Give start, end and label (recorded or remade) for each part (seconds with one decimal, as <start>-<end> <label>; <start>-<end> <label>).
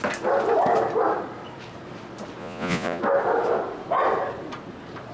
0.0-2.4 recorded; 2.4-3.0 remade; 3.0-5.1 recorded